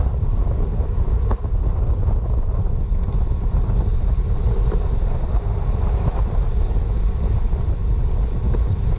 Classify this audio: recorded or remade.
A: remade